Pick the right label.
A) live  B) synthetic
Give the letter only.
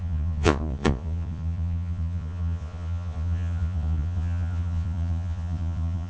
B